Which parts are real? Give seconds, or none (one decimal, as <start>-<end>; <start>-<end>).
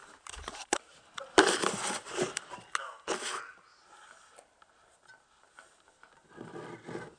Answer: 2.4-7.2